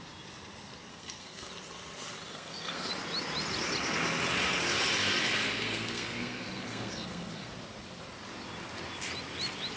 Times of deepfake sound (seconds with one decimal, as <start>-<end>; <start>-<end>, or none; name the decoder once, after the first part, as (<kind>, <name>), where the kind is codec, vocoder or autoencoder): 0.9-1.5 (codec, SNAC); 2.3-2.9; 5.4-7.5

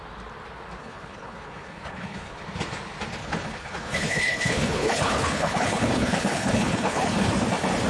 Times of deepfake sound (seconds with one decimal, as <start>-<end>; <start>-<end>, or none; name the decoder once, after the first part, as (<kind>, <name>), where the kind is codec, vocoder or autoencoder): 0.8-2.4 (codec, HILCodec); 3.2-7.3